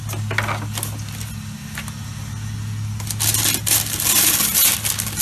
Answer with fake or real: real